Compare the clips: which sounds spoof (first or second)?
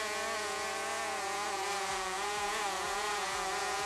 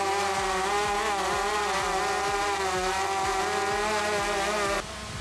first